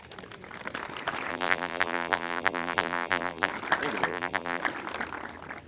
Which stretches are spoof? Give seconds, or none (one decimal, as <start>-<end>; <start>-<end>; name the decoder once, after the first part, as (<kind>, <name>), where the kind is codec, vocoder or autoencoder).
1.3-3.5 (vocoder, BigVGAN v2); 4.1-4.6